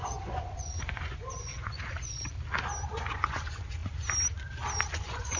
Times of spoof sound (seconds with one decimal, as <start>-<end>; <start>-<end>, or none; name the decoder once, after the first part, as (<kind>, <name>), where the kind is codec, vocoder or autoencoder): 0.0-2.3 (vocoder, Vocos); 2.9-3.8; 4.9-5.4